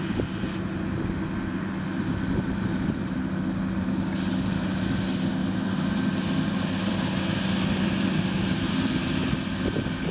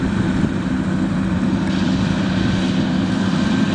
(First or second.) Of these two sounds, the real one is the first